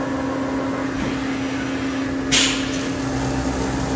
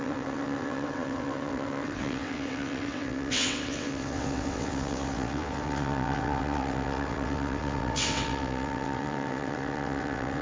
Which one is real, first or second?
first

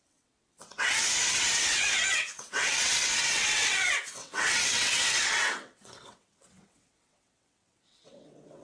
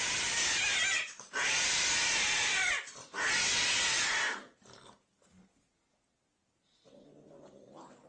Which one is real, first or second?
second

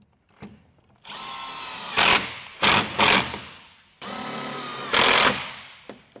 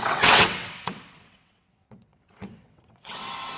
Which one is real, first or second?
first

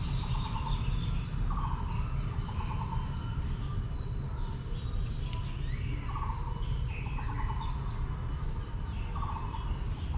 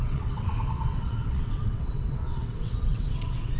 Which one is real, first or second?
first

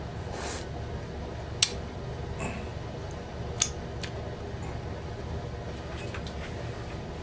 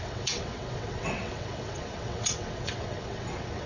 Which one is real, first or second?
first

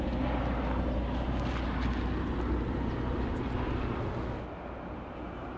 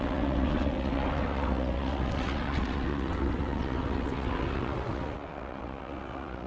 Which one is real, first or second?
first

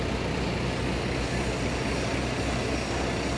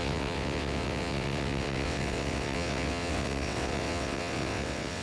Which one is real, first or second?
first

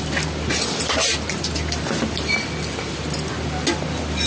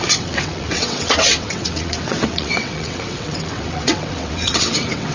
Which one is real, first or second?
first